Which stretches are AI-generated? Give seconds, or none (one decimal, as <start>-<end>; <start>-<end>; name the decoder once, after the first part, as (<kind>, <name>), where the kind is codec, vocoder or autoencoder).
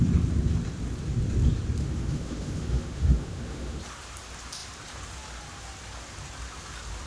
1.8-3.8 (autoencoder, DAC-VAE)